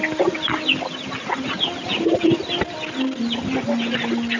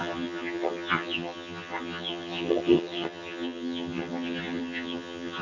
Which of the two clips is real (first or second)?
first